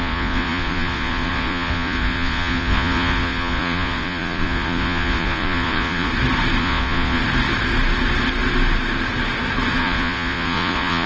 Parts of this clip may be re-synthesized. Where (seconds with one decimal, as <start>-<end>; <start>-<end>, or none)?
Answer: 0.0-6.1; 6.6-7.2; 9.8-11.1